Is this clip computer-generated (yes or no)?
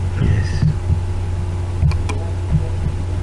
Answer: no